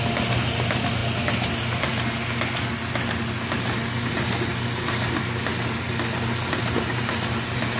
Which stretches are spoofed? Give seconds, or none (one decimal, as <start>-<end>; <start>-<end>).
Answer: none